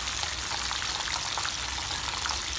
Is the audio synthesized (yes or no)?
no